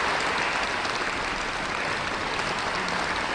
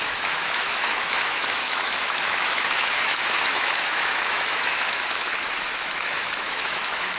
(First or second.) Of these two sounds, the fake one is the second